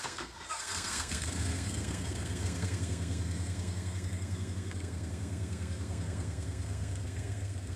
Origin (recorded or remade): remade